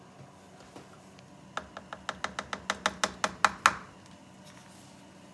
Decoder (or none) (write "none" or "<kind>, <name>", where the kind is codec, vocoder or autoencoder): none